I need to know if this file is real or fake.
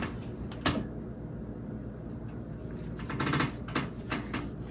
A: real